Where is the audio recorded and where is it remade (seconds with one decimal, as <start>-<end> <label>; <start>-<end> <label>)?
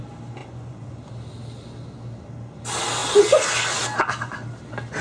0.0-0.4 recorded; 0.4-1.1 remade; 1.1-5.0 recorded